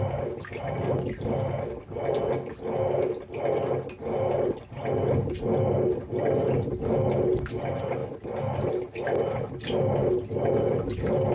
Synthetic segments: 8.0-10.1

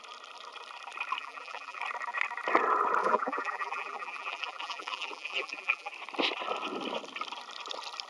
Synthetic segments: 1.2-1.8; 3.0-5.9